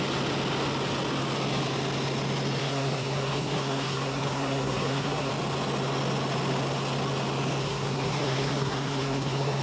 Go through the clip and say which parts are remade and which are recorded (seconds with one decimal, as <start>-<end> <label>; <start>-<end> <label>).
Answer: 0.0-2.6 recorded; 2.6-5.3 remade; 5.3-7.6 recorded; 7.6-9.6 remade